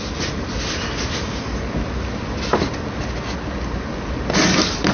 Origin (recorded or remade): recorded